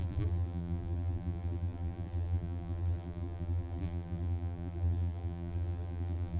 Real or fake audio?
fake